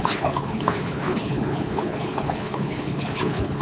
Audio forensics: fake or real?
fake